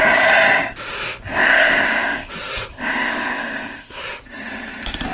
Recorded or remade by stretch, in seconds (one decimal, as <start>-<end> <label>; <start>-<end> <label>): 0.0-1.3 recorded; 1.3-2.3 remade; 2.3-2.7 recorded; 2.7-4.0 remade; 4.0-5.1 recorded

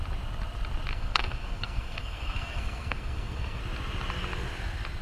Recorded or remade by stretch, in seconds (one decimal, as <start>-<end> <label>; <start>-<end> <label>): 0.0-0.9 recorded; 0.9-3.6 remade; 3.6-5.0 recorded

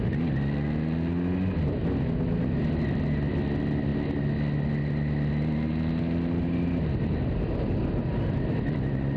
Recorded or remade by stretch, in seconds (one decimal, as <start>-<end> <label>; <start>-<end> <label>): 0.0-9.2 recorded

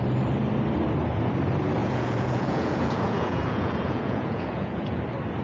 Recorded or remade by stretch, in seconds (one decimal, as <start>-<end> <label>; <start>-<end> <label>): 0.0-1.8 recorded; 1.8-5.0 remade; 5.0-5.4 recorded

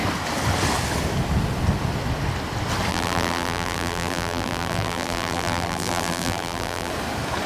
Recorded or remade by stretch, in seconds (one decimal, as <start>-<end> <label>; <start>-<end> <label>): 0.0-2.9 recorded; 2.9-6.9 remade; 6.9-7.5 recorded